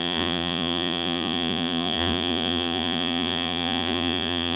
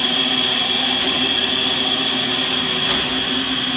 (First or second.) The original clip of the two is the second